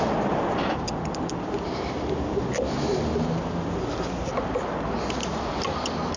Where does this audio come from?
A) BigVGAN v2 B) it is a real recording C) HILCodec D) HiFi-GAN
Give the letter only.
B